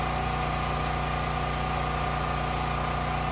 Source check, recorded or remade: recorded